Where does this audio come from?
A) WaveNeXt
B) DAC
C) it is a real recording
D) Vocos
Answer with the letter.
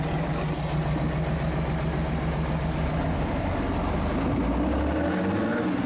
C